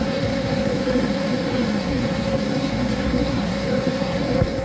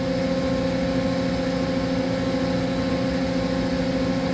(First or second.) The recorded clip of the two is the second